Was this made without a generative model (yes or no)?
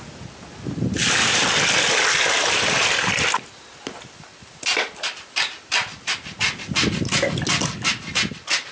yes